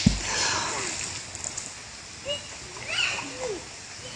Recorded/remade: recorded